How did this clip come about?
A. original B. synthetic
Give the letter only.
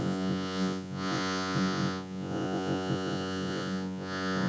B